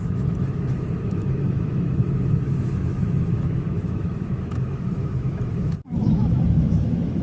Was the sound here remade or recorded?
remade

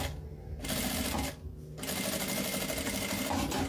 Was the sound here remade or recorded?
recorded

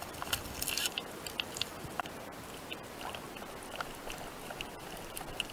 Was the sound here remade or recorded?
recorded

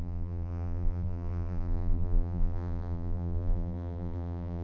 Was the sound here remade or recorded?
remade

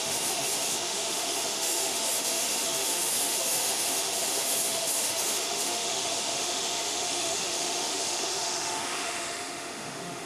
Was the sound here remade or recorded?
remade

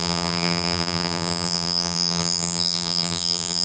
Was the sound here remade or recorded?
remade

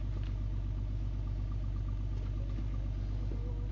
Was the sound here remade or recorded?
recorded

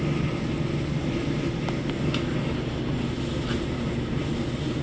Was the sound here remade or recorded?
recorded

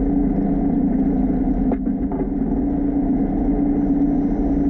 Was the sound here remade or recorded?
recorded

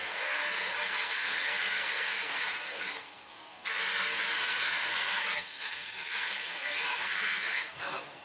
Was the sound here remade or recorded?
remade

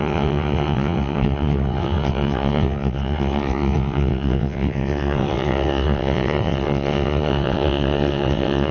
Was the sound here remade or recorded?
remade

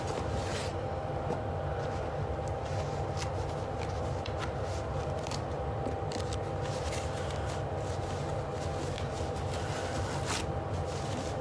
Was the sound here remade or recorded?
recorded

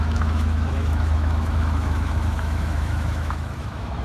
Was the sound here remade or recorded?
remade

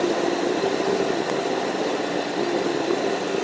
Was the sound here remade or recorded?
recorded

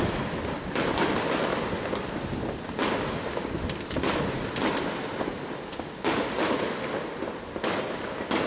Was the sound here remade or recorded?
recorded